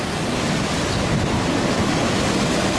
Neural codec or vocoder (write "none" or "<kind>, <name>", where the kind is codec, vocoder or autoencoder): none